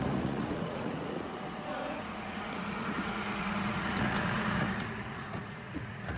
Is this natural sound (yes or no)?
no